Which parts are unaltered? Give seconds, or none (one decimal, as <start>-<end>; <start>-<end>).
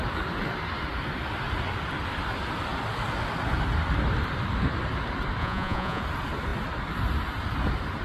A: 0.0-5.4; 6.0-8.0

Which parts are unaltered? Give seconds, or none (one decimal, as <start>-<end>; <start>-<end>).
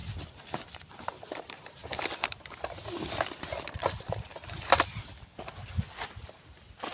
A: 0.0-1.4; 1.8-3.8; 4.3-6.2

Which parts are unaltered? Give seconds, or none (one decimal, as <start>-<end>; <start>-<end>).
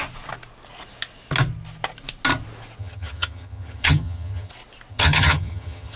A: 0.0-2.8; 4.5-4.9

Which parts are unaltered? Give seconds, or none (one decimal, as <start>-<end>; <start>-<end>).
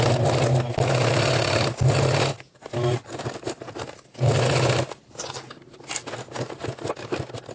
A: 0.0-7.5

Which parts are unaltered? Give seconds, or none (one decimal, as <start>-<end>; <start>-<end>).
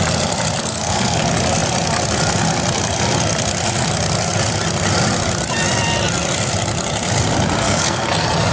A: 0.0-0.6; 1.2-7.6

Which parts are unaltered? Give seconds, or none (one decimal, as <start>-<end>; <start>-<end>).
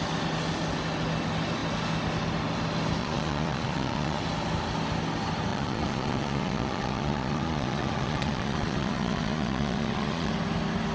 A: 0.0-3.0; 4.2-5.5; 10.3-10.9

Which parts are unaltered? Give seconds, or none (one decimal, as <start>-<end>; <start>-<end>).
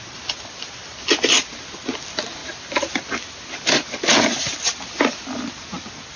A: 0.0-6.2